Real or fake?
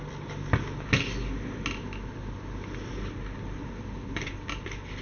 real